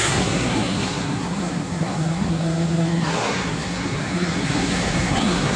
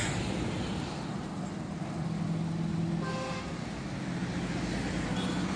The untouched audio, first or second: second